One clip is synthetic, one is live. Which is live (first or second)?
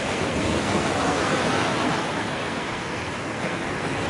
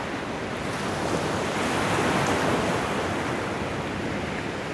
second